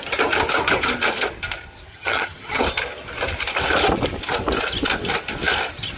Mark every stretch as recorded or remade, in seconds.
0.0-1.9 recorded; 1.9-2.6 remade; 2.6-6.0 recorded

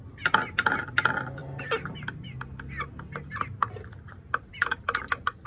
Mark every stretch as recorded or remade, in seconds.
0.0-5.5 recorded

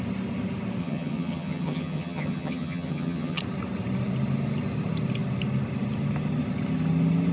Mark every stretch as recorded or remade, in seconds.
0.0-0.8 recorded; 0.8-3.4 remade; 3.4-7.3 recorded

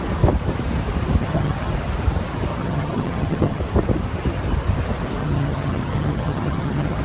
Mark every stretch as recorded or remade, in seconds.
0.0-1.2 recorded; 1.2-1.7 remade; 1.7-2.5 recorded; 2.5-3.6 remade; 3.6-5.2 recorded; 5.2-7.0 remade

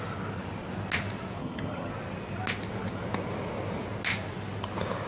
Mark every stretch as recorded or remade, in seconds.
0.0-1.4 recorded; 1.4-1.9 remade; 1.9-5.1 recorded